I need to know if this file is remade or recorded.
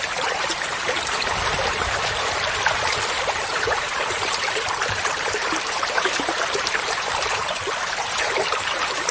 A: remade